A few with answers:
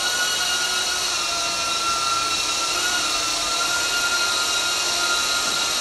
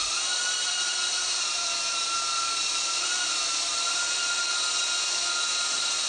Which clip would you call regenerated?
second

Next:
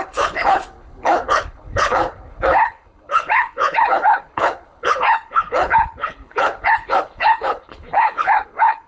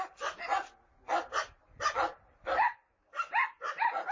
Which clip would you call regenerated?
first